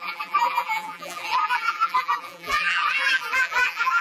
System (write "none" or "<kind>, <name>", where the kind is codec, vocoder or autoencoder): vocoder, BigVGAN v2